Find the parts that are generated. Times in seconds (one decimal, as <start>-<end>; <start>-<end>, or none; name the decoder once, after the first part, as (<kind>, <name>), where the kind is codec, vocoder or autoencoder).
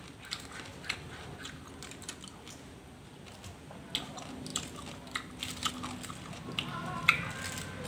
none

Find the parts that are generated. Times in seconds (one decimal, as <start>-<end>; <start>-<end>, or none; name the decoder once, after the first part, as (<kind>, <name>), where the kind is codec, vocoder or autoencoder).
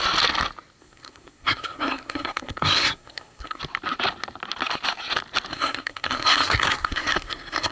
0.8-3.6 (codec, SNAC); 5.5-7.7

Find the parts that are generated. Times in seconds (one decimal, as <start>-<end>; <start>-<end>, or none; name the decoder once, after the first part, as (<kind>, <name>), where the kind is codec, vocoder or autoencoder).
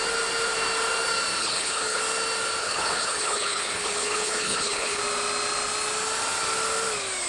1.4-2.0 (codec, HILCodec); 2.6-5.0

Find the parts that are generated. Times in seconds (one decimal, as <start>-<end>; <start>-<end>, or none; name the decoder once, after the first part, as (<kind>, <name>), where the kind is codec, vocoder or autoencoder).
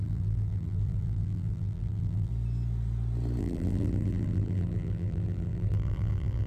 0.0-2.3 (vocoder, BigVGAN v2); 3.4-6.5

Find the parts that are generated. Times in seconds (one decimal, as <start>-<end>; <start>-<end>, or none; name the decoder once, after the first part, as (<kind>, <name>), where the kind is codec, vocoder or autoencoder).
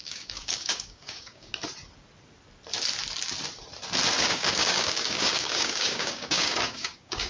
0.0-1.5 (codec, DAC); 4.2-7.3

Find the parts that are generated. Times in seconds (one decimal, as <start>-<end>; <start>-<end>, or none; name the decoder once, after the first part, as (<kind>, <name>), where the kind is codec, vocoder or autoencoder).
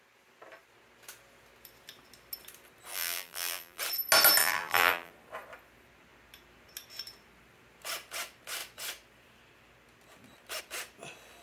2.9-3.8 (vocoder, BigVGAN v2); 4.4-5.1